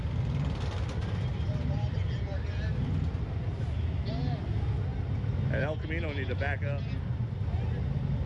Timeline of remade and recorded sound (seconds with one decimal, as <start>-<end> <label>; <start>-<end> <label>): 0.0-1.0 recorded; 1.0-1.9 remade; 1.9-8.3 recorded